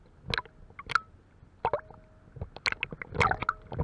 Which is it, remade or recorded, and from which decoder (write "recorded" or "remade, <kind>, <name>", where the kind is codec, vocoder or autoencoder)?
recorded